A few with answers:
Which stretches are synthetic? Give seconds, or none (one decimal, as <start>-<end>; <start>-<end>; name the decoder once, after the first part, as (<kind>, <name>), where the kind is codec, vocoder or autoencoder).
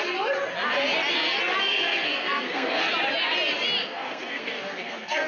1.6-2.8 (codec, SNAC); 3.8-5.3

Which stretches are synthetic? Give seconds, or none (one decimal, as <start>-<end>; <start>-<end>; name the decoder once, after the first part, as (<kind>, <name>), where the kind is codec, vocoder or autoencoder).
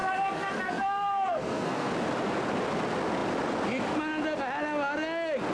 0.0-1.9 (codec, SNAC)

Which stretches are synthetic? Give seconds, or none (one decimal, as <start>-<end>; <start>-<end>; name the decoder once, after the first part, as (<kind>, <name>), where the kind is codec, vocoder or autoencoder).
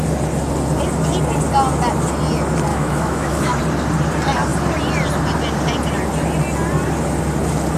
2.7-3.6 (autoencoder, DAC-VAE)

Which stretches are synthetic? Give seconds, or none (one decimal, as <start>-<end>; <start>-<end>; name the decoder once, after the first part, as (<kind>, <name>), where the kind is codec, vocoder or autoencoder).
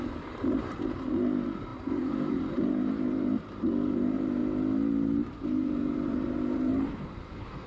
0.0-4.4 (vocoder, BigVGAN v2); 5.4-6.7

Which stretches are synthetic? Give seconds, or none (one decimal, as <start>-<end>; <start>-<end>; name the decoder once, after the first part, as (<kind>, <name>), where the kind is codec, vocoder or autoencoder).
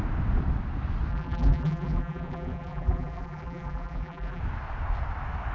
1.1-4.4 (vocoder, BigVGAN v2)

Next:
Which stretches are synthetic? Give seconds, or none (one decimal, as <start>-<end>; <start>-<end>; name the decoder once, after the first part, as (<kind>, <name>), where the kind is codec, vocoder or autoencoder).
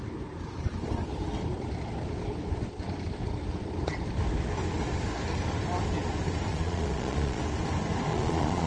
6.5-7.4 (vocoder, Vocos); 8.1-8.7